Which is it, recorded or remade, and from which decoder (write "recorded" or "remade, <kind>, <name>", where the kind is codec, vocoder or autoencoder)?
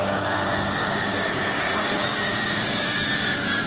remade, codec, DAC